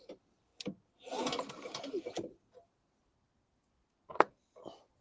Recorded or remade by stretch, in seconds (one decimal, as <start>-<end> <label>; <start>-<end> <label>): 0.0-5.0 recorded